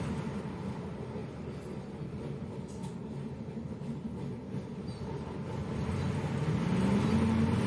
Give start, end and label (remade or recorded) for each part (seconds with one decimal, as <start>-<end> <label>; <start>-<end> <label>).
0.0-7.7 recorded